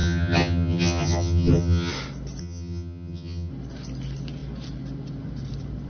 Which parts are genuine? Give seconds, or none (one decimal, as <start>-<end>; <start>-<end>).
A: 1.9-2.4; 3.5-5.9